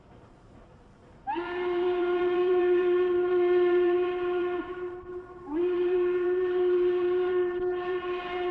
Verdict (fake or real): fake